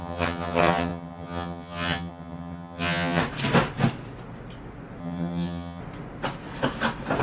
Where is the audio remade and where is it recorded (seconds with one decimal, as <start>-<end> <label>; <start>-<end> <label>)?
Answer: 0.0-3.2 remade; 3.2-5.0 recorded; 5.0-5.8 remade; 5.8-7.2 recorded